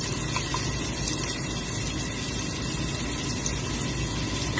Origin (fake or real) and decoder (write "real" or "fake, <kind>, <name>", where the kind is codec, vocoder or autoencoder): real